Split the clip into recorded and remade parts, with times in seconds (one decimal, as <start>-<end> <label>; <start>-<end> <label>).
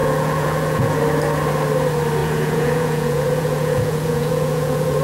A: 0.0-1.0 remade; 1.0-2.2 recorded; 2.2-5.0 remade